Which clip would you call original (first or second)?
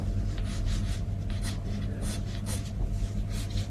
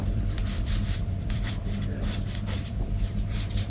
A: first